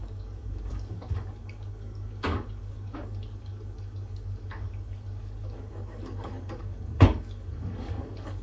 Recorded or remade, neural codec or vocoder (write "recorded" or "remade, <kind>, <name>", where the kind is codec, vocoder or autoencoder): remade, codec, DAC